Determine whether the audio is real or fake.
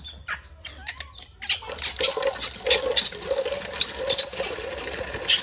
real